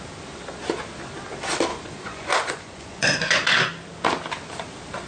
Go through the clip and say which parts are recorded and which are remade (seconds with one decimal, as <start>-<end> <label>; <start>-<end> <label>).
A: 0.0-1.7 recorded; 1.7-3.6 remade; 3.6-5.1 recorded